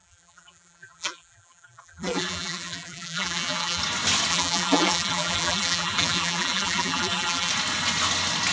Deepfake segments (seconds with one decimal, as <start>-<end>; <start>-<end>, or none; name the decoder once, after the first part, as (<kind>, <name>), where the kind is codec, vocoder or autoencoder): 0.0-3.8 (vocoder, BigVGAN v2); 4.3-7.5

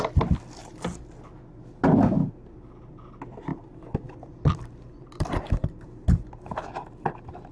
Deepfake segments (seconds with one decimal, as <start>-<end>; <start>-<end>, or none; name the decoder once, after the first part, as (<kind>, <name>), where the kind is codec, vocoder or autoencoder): 0.6-1.2 (vocoder, BigVGAN v2); 3.5-5.4

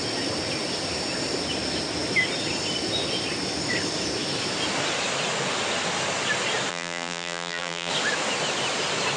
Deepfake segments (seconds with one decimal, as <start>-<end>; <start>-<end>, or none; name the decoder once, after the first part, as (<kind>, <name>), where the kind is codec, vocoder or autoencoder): 6.7-7.9 (vocoder, BigVGAN v2)

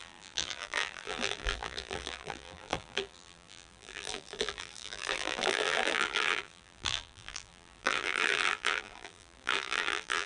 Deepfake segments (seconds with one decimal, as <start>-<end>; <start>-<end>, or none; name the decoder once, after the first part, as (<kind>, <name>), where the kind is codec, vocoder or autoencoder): 0.0-10.3 (vocoder, BigVGAN v2)

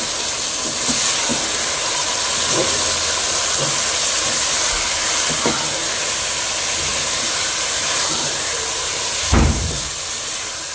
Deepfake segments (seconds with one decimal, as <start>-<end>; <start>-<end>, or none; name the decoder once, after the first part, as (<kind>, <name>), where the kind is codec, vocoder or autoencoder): 1.3-2.1 (vocoder, BigVGAN v2); 6.9-9.9